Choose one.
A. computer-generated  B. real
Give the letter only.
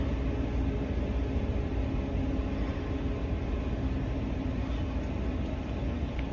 B